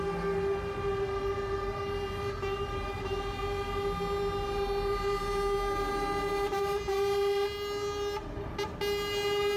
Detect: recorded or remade recorded